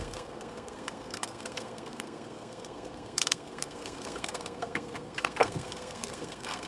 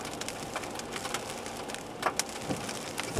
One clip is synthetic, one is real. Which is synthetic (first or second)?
first